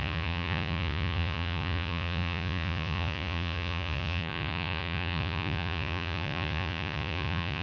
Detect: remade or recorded remade